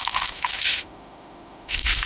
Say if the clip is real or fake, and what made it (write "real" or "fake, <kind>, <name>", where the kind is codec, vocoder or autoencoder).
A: fake, autoencoder, DAC-VAE